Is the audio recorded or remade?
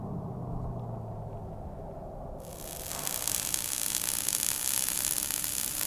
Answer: recorded